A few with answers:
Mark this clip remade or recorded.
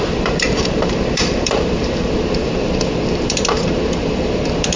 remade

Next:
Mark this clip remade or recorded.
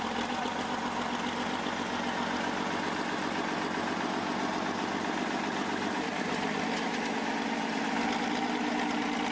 recorded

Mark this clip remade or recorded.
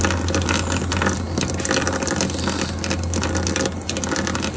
recorded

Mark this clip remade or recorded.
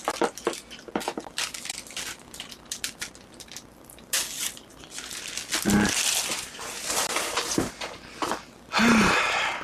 recorded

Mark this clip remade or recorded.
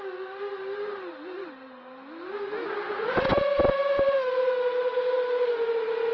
recorded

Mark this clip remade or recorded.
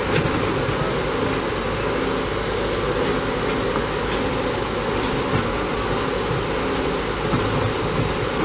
recorded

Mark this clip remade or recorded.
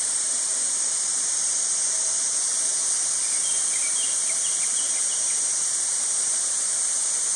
remade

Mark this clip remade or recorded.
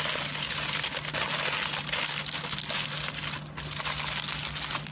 recorded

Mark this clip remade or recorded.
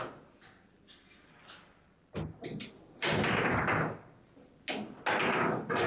recorded